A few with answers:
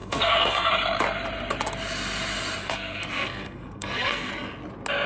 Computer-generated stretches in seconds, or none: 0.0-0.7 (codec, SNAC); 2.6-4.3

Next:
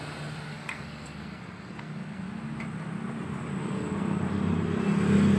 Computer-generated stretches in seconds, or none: 0.5-2.2 (codec, SNAC); 3.6-4.2